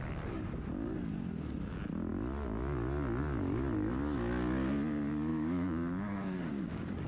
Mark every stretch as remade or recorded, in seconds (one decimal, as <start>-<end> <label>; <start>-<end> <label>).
0.0-5.3 recorded; 5.3-7.1 remade